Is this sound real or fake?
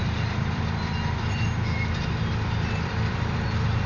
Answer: fake